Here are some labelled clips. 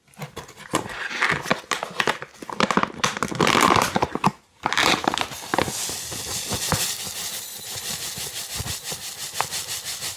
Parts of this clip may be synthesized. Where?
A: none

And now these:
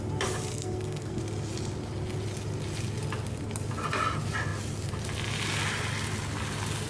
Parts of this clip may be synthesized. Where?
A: 0.5-1.2 (codec, SNAC)

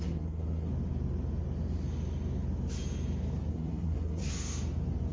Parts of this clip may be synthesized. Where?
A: 0.0-0.7 (codec, SNAC); 3.5-4.2

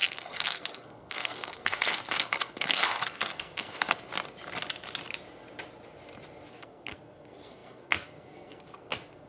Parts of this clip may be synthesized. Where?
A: 0.0-4.1 (codec, SNAC); 6.5-9.3

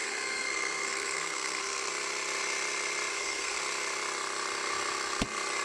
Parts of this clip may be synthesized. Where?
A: 0.0-1.9 (codec, SNAC); 3.1-3.6

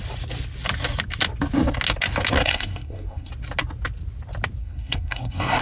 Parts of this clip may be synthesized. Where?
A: 2.4-3.3 (codec, SNAC); 4.6-5.6

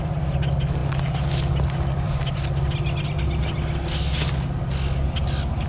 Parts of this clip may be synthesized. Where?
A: none

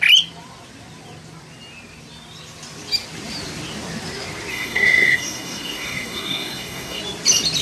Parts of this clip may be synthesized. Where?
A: 4.5-7.0 (codec, SNAC)